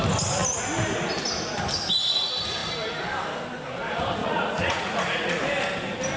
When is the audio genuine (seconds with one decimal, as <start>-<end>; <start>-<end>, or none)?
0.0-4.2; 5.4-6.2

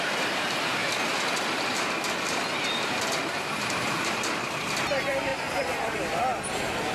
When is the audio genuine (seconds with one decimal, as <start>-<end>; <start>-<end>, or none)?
0.0-0.8; 3.5-5.3; 6.2-6.9

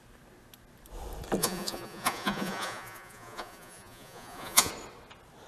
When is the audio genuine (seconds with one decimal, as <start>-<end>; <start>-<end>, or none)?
0.0-1.4; 4.7-5.5